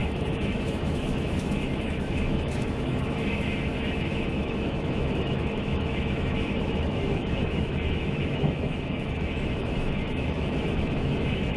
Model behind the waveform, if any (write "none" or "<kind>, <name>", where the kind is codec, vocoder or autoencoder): autoencoder, DAC-VAE